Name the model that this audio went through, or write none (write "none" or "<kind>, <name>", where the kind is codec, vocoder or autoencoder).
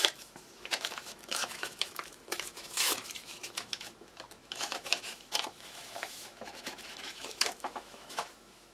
autoencoder, DAC-VAE